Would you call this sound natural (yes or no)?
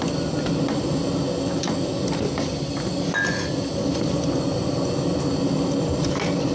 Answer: yes